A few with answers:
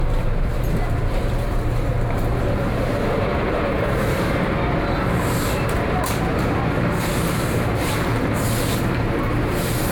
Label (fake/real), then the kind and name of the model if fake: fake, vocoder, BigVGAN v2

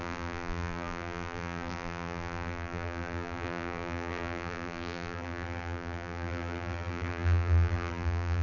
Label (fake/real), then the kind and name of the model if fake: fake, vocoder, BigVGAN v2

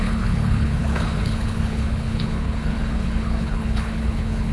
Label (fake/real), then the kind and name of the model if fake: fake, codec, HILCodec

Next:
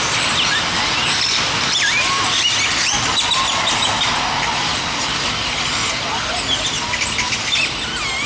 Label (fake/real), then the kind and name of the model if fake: real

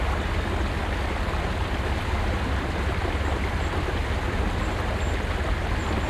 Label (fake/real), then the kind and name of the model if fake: real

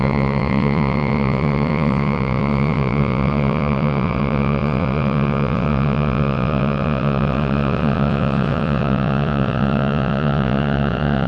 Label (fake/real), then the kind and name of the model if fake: fake, vocoder, WaveNeXt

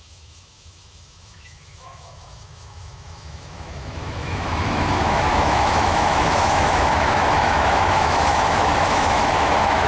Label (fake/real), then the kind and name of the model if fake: fake, autoencoder, DAC-VAE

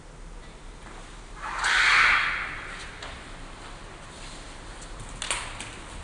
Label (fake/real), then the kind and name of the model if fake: real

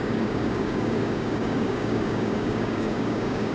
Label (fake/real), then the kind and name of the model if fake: fake, codec, DAC